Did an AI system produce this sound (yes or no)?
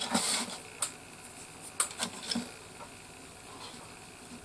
no